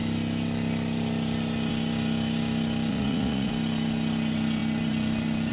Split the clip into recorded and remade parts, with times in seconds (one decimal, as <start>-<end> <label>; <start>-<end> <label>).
0.0-2.9 recorded; 2.9-3.5 remade; 3.5-5.5 recorded